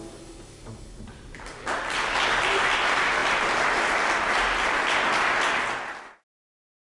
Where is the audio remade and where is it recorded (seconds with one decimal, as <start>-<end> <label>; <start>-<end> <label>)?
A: 0.0-6.8 recorded